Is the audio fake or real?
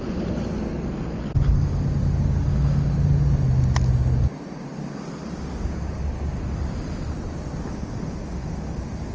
real